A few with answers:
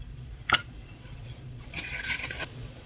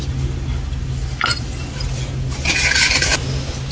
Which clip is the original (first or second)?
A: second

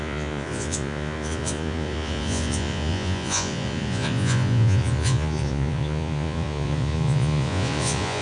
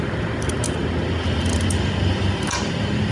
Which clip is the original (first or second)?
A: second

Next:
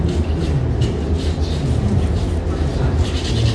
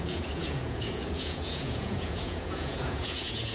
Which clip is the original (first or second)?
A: first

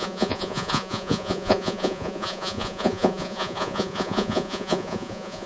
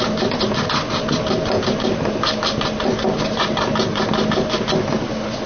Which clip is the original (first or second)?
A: second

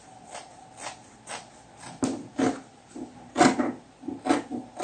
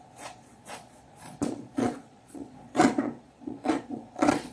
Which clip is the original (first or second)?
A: first